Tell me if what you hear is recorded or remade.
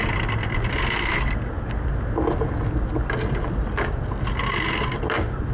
recorded